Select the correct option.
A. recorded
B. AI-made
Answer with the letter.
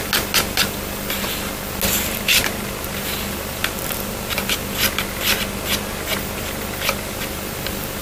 A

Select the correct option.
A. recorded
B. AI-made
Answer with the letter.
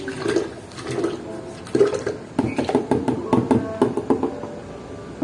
A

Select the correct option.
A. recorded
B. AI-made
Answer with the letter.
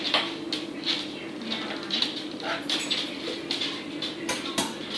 A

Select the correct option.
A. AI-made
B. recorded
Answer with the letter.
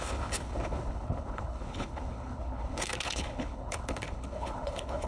A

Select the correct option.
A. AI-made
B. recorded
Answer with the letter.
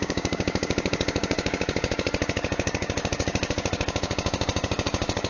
A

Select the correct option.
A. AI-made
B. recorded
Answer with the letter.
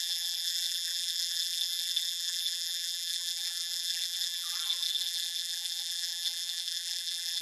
A